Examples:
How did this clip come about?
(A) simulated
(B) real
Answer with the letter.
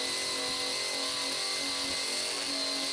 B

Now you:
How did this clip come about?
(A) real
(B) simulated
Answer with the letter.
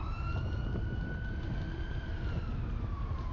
A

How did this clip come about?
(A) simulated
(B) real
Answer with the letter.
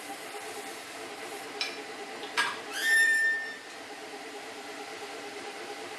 A